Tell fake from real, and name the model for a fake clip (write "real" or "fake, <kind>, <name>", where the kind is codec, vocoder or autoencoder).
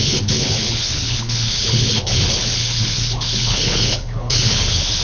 fake, codec, HILCodec